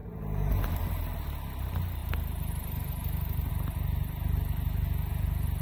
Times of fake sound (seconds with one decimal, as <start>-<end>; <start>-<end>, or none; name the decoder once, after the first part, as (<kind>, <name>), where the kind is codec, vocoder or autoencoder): 0.0-1.1 (vocoder, BigVGAN v2); 2.0-3.5